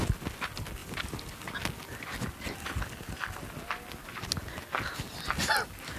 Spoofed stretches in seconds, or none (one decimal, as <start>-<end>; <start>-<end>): none